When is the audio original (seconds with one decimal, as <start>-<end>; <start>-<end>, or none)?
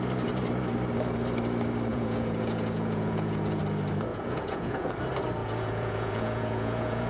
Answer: 0.0-1.9; 3.6-4.1; 4.9-5.4